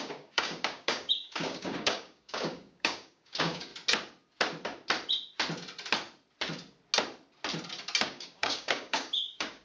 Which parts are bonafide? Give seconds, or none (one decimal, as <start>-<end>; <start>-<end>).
3.7-8.0